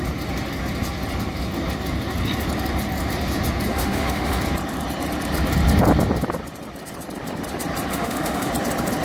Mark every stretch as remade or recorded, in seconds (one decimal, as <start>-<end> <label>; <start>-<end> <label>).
0.0-3.7 recorded; 3.7-4.4 remade; 4.4-7.9 recorded; 7.9-8.5 remade; 8.5-9.0 recorded